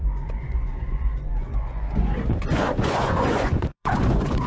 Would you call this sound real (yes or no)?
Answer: no